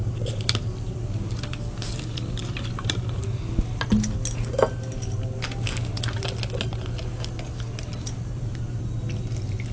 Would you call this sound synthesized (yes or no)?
no